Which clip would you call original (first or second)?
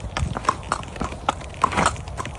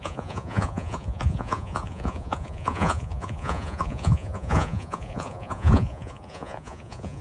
first